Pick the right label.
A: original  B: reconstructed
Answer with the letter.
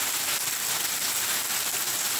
A